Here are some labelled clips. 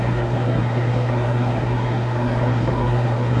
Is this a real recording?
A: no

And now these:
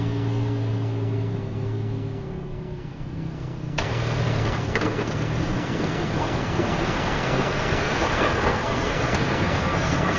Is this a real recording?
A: no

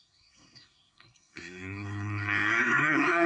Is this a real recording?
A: no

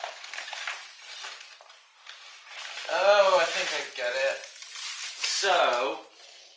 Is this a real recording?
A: yes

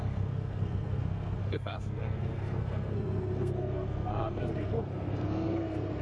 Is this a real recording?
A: no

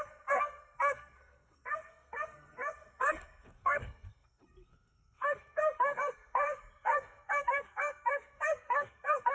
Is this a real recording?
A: no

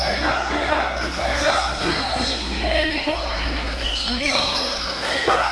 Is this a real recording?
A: no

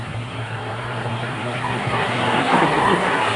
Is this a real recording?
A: no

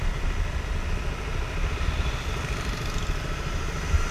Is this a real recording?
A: yes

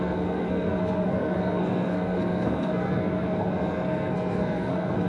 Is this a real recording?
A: no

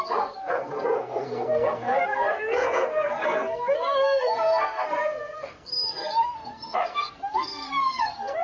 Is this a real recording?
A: no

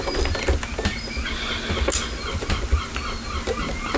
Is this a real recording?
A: yes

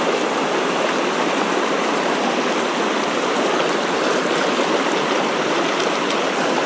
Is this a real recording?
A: yes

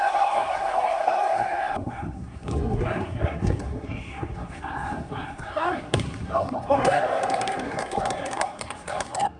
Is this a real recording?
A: no